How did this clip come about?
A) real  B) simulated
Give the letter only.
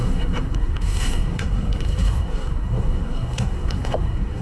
B